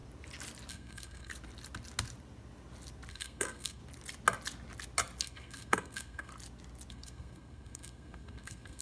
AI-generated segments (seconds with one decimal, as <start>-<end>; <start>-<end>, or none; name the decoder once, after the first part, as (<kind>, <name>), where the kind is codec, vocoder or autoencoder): 0.7-1.3 (codec, SNAC); 3.1-3.8; 5.2-6.3; 6.9-8.8